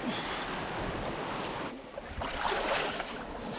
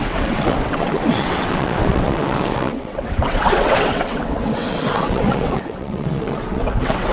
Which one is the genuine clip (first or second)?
first